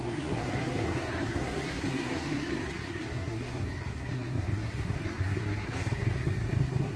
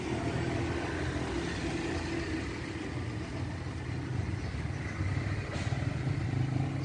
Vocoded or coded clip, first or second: first